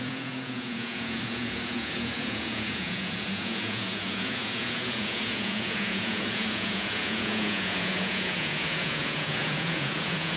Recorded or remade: remade